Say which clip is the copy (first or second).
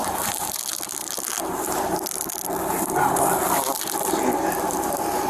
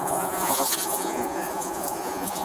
second